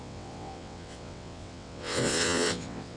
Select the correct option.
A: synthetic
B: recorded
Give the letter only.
A